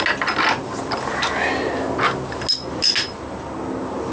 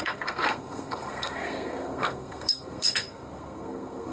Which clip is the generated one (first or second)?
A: second